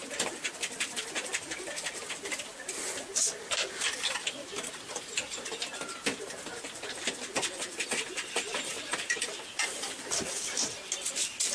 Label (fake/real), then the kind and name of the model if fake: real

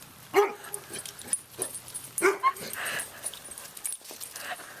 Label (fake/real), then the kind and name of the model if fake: real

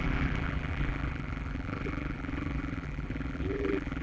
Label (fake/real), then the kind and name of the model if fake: fake, vocoder, BigVGAN v2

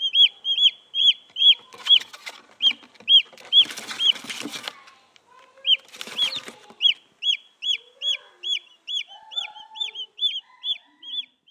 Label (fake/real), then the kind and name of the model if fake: real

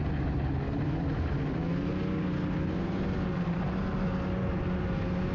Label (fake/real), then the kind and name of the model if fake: real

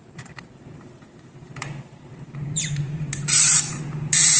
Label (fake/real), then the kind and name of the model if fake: fake, vocoder, BigVGAN v2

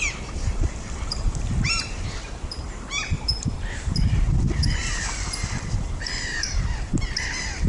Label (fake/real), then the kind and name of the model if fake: fake, vocoder, BigVGAN v2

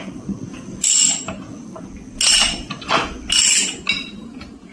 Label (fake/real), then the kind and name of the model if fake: real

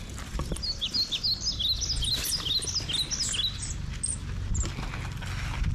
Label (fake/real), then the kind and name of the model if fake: real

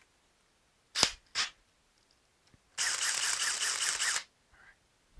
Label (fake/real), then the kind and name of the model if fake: real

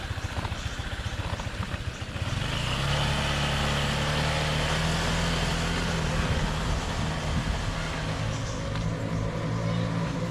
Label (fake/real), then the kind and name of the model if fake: real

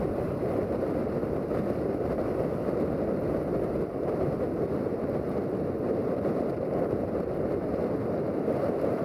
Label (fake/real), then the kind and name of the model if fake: real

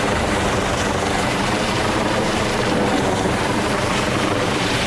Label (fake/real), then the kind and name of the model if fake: fake, vocoder, BigVGAN v2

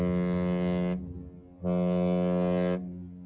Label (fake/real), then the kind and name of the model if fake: real